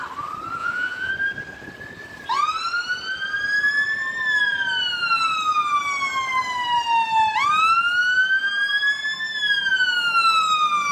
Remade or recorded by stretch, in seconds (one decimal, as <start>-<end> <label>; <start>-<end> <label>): 0.0-0.6 recorded; 0.6-1.1 remade; 1.1-10.9 recorded